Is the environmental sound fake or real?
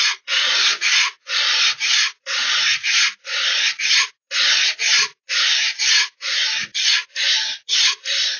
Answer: real